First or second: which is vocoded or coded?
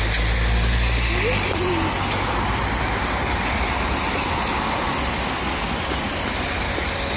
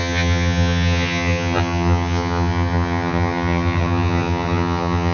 second